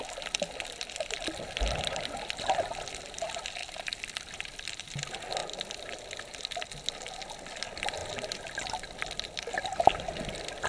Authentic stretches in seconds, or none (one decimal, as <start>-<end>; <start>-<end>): 0.0-3.6; 5.0-10.7